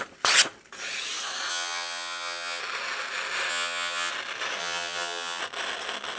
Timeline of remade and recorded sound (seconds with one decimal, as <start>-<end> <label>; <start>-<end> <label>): 0.0-1.5 recorded; 1.5-2.6 remade; 2.6-3.5 recorded; 3.5-4.1 remade; 4.1-4.6 recorded; 4.6-5.4 remade; 5.4-6.2 recorded